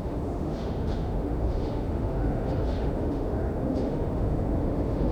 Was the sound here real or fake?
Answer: fake